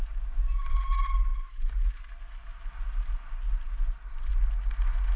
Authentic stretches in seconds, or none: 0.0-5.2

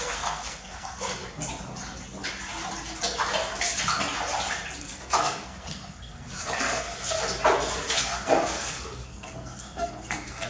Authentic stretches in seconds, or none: 1.2-4.8; 7.2-7.9

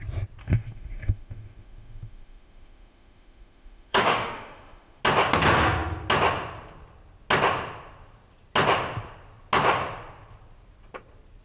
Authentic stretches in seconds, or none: 0.0-0.4; 5.0-11.4

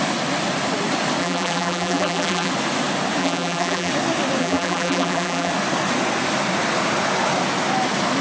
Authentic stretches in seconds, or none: 0.0-1.2; 2.5-3.2; 3.9-4.4; 5.5-8.2

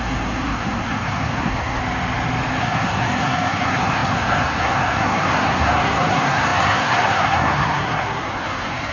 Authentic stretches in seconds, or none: 1.8-2.6